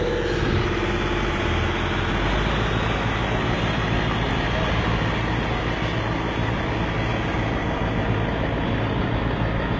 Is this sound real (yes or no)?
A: yes